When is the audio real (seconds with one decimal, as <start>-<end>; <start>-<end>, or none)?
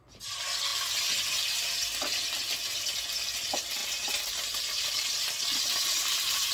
0.0-3.8